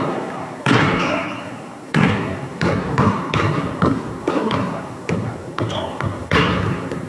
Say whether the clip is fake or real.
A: fake